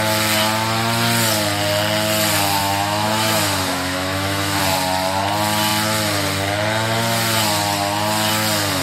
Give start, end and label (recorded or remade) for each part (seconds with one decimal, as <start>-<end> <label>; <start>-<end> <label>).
0.0-2.6 recorded; 2.6-4.6 remade; 4.6-8.8 recorded